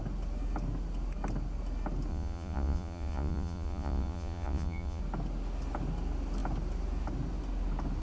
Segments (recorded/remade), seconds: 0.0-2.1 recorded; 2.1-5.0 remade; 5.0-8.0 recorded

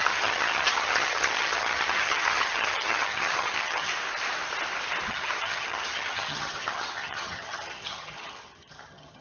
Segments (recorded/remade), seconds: 0.0-3.9 remade; 3.9-5.1 recorded; 5.1-9.2 remade

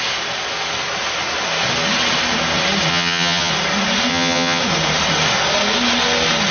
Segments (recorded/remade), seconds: 0.0-2.9 recorded; 2.9-3.5 remade; 3.5-4.1 recorded; 4.1-4.6 remade; 4.6-6.5 recorded

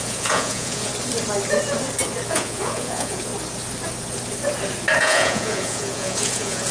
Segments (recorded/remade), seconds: 0.0-0.9 remade; 0.9-2.3 recorded; 2.3-3.3 remade; 3.3-5.0 recorded; 5.0-6.7 remade